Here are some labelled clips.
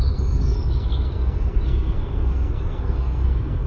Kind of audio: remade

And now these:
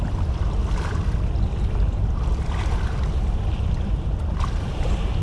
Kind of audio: recorded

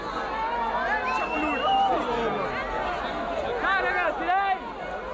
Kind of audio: recorded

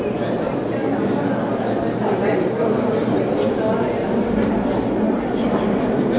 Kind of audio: recorded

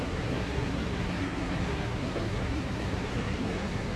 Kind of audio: remade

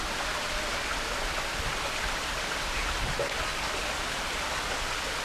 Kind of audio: recorded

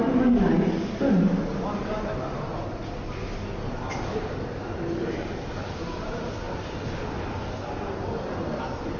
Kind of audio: recorded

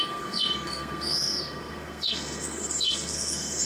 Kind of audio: remade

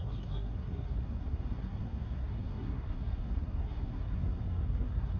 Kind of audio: remade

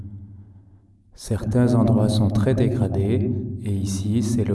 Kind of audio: recorded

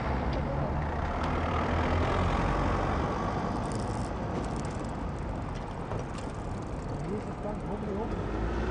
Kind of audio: recorded